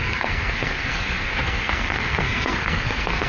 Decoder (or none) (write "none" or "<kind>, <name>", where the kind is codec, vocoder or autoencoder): codec, SNAC